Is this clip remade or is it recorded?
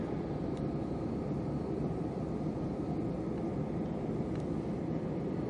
recorded